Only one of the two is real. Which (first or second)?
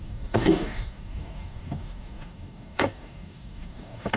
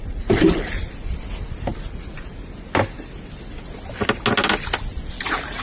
second